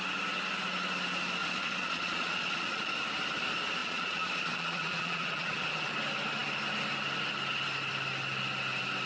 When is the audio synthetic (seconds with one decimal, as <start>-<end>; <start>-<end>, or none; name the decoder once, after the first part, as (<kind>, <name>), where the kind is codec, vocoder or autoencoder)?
1.4-2.9 (vocoder, Vocos); 3.8-5.9